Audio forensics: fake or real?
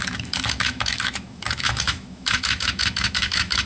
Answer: fake